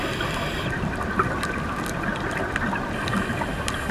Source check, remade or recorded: recorded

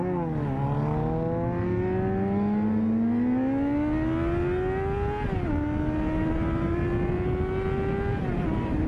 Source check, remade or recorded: recorded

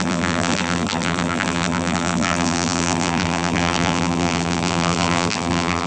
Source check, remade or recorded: remade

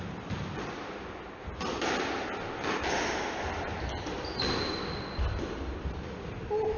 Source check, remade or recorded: recorded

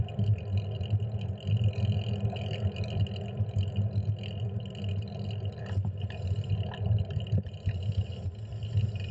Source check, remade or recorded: recorded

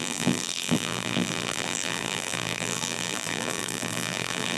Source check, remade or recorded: remade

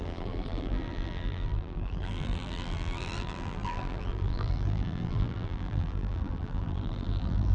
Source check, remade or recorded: remade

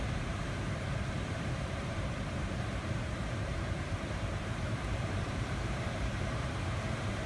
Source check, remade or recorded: remade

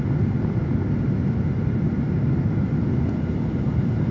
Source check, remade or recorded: recorded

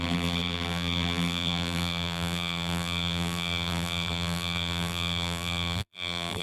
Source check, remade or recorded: remade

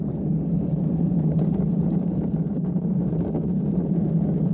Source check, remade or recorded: remade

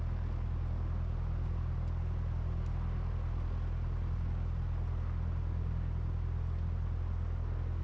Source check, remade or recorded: recorded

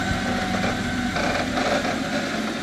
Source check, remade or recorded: recorded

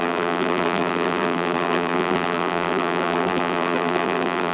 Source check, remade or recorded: remade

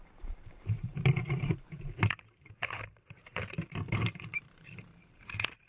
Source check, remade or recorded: remade